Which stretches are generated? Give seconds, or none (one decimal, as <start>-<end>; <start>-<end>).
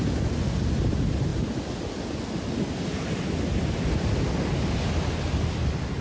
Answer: none